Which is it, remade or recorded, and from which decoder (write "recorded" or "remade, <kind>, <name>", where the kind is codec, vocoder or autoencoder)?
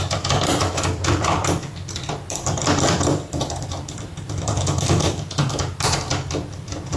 remade, vocoder, BigVGAN v2